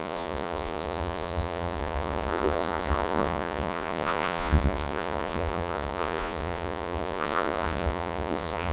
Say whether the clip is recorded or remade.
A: remade